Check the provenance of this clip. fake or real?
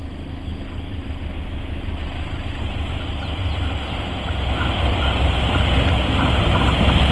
real